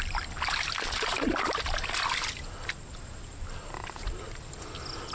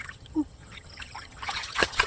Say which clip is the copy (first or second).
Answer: second